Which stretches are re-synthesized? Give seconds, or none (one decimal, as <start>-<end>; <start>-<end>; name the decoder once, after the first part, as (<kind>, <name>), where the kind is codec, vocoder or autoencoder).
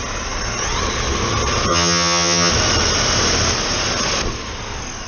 1.7-2.5 (vocoder, HiFi-GAN)